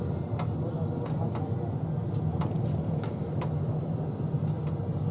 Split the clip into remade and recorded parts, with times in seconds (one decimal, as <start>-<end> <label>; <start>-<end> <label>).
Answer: 0.0-5.1 recorded